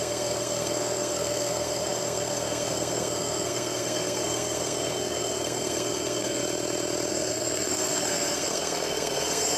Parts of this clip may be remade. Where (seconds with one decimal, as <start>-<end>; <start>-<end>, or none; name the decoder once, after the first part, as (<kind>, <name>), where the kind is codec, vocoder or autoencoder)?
0.0-6.4 (codec, SNAC); 7.1-9.6